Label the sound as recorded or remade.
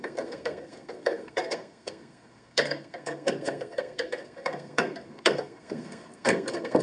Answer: remade